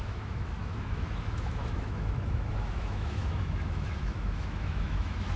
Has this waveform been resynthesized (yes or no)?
yes